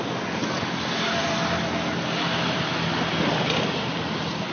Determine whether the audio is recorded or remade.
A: recorded